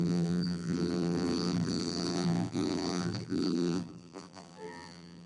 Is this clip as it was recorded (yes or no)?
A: no